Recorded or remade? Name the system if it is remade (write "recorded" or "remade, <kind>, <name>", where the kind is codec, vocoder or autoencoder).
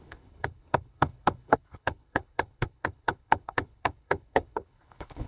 remade, codec, HILCodec